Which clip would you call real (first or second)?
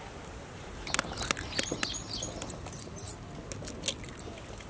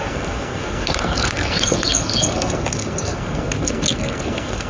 first